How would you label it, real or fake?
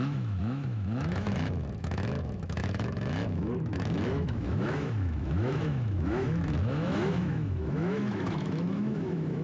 fake